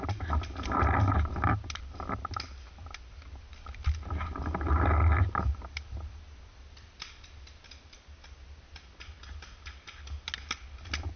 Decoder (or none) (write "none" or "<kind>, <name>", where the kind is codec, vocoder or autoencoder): none